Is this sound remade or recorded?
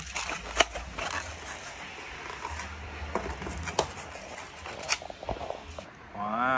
recorded